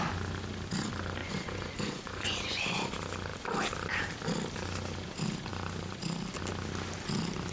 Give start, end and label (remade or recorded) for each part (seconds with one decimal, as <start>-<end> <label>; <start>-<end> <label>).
0.0-1.2 recorded; 1.2-2.9 remade; 2.9-7.5 recorded

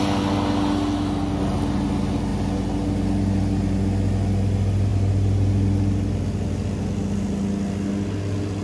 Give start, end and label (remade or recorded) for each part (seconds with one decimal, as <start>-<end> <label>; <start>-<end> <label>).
0.0-8.6 recorded

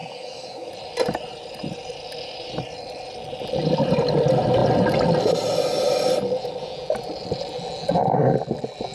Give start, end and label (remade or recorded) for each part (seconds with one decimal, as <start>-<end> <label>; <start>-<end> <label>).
0.0-0.7 remade; 0.7-8.9 recorded

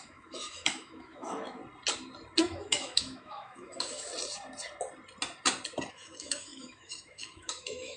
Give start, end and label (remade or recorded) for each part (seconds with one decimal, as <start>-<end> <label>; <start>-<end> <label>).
0.0-1.6 remade; 1.6-2.4 recorded; 2.4-4.1 remade; 4.1-5.9 recorded; 5.9-8.0 remade